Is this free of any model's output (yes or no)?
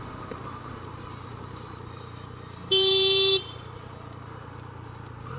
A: no